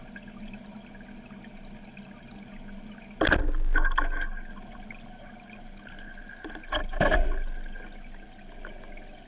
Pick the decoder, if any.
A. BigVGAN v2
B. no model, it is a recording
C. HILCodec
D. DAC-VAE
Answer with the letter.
B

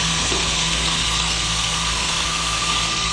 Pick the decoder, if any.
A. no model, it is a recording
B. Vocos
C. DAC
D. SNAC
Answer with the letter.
D